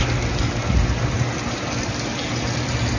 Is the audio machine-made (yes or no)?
no